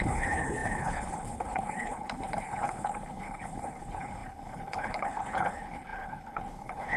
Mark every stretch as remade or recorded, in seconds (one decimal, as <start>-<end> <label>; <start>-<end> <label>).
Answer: 0.0-7.0 remade